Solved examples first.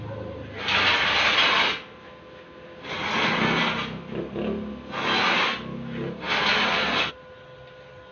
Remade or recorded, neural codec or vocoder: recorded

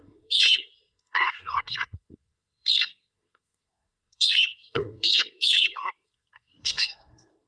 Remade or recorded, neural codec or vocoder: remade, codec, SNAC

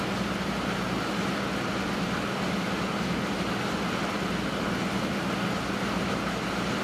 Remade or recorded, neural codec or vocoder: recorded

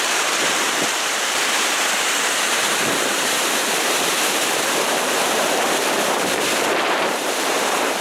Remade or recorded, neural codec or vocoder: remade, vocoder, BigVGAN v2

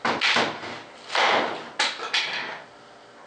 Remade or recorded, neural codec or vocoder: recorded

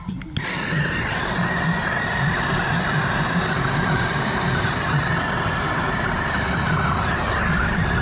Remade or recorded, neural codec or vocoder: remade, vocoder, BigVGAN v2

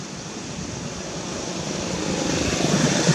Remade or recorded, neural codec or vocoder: recorded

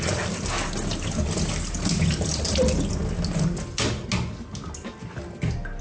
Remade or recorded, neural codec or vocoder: recorded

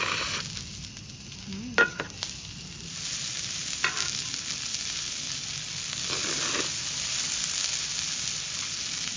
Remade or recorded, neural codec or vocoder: recorded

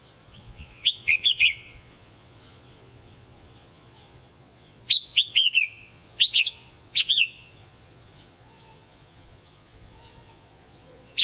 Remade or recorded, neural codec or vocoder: remade, vocoder, Vocos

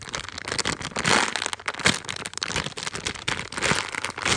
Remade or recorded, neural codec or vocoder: recorded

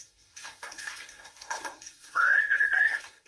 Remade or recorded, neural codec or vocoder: remade, codec, SNAC